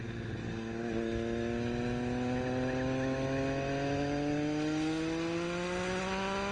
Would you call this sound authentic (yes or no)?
yes